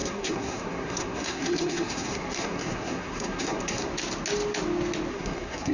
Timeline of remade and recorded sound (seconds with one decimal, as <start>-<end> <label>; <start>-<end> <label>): 0.0-3.9 remade; 3.9-5.1 recorded; 5.1-5.7 remade